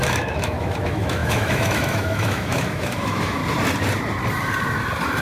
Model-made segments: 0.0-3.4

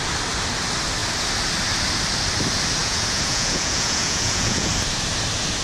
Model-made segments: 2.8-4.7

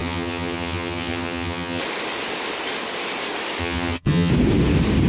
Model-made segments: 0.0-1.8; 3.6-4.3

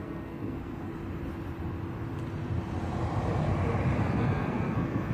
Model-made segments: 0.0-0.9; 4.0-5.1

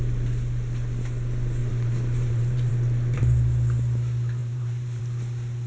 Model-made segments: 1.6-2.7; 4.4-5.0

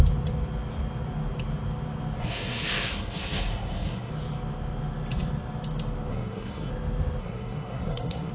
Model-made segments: 2.2-4.1; 6.1-6.7; 7.2-8.3

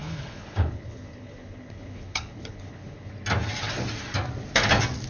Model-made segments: 0.0-3.1